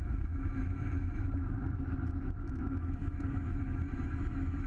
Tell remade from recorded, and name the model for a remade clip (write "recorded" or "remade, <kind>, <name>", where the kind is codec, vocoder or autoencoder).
remade, autoencoder, DAC-VAE